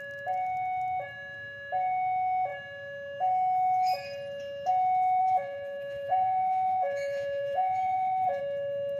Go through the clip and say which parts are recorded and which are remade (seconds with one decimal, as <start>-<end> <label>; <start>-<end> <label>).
0.0-5.2 recorded; 5.2-8.4 remade; 8.4-9.0 recorded